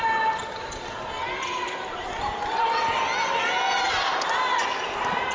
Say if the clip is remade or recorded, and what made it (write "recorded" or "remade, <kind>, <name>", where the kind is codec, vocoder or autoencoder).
recorded